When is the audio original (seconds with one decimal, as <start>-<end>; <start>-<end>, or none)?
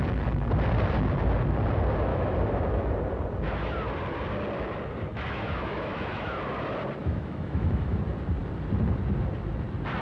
0.0-2.1; 2.9-5.1; 6.4-7.0; 8.0-10.0